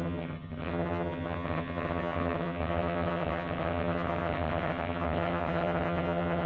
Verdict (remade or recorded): remade